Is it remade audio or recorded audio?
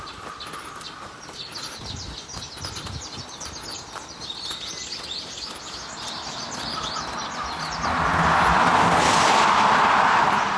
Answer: recorded